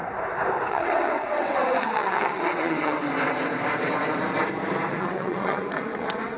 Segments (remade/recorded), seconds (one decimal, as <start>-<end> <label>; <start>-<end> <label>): 0.0-0.7 recorded; 0.7-3.0 remade; 3.0-4.9 recorded; 4.9-6.4 remade